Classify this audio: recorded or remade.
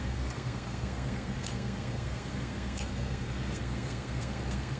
remade